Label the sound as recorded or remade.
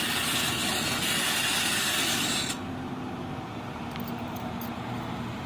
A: recorded